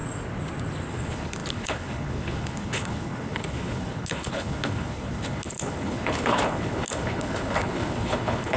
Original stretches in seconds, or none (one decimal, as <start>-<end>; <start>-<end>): 0.0-0.9